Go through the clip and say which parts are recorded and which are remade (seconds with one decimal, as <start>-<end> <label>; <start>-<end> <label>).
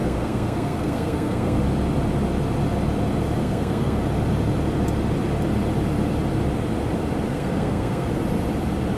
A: 0.0-1.6 remade; 1.6-3.4 recorded; 3.4-4.0 remade; 4.0-7.3 recorded; 7.3-8.1 remade; 8.1-9.0 recorded